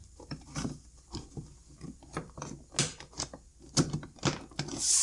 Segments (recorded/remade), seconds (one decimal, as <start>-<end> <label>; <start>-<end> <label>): 0.0-2.0 remade; 2.0-5.0 recorded